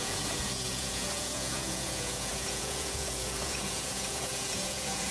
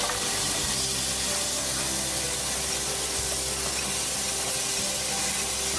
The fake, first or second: first